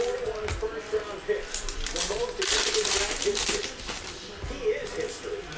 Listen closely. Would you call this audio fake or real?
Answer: real